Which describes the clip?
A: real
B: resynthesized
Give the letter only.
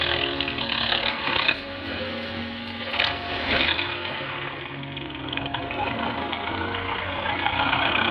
B